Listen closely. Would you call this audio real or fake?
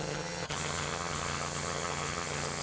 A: fake